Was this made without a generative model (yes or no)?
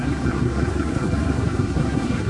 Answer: no